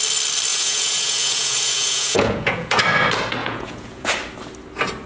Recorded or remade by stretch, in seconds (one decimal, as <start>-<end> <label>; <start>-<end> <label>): 0.0-0.5 recorded; 0.5-2.8 remade; 2.8-3.4 recorded; 3.4-4.1 remade; 4.1-5.1 recorded